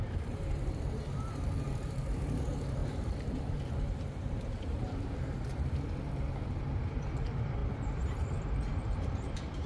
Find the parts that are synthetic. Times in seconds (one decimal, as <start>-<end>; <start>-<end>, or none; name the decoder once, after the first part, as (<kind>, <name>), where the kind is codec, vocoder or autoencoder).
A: 0.0-9.7 (vocoder, BigVGAN v2)

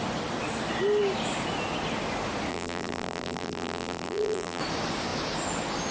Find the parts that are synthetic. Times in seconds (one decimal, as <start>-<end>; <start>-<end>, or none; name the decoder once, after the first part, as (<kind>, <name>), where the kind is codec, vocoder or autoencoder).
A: 2.5-4.6 (vocoder, BigVGAN v2)

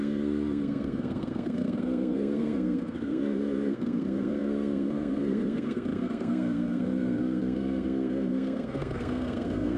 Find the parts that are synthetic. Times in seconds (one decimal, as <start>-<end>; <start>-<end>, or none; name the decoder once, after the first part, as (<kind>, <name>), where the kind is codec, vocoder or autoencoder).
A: 0.0-9.8 (codec, SNAC)

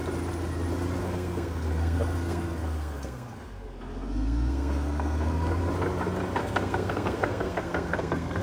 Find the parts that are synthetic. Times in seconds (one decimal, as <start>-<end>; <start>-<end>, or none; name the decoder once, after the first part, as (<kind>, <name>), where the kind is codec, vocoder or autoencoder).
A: 1.0-5.7 (codec, SNAC); 6.4-8.4

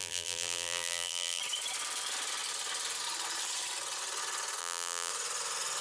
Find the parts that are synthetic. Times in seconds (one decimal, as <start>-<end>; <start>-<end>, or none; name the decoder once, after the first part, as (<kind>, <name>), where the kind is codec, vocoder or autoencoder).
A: 0.0-1.4 (vocoder, BigVGAN v2); 4.6-5.1

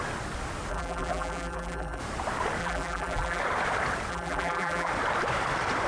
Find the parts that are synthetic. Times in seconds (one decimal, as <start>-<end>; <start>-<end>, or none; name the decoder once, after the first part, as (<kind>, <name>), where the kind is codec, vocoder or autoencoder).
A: 0.7-2.0 (vocoder, BigVGAN v2); 2.6-3.4; 4.1-4.9

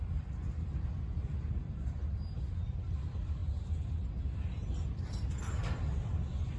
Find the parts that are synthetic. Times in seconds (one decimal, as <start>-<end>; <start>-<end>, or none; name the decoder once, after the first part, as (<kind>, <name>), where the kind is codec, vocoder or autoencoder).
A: none

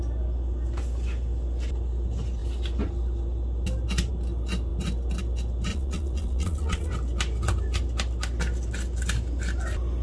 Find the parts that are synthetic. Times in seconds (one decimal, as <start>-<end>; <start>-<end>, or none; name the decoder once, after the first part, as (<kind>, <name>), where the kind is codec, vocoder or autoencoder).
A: 5.7-6.9 (vocoder, Vocos)